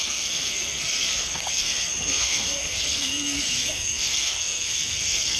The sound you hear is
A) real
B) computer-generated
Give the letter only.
B